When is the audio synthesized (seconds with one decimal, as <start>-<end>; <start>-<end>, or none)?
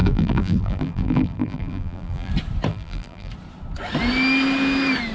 0.0-2.3; 2.7-3.3